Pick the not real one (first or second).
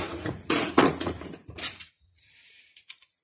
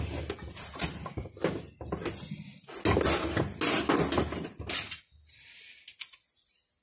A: first